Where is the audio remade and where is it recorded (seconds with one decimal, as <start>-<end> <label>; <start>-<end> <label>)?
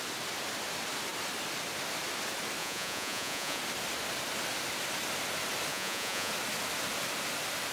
0.0-2.6 recorded; 2.6-3.6 remade; 3.6-5.7 recorded; 5.7-6.3 remade; 6.3-7.7 recorded